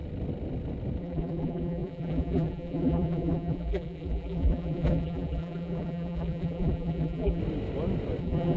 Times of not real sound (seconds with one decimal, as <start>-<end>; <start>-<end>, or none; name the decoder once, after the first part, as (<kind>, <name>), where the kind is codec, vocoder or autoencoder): 1.0-7.4 (vocoder, BigVGAN v2); 8.2-8.6